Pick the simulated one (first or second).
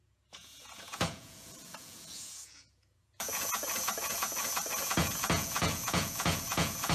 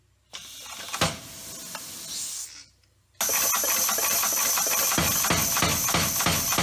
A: first